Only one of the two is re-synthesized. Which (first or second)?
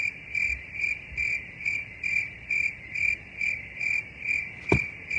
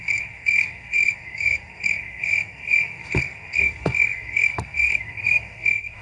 second